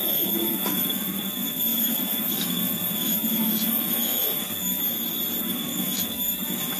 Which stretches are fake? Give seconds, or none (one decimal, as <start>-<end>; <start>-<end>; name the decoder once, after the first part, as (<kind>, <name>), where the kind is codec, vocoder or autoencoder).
0.0-4.8 (autoencoder, DAC-VAE); 5.4-6.8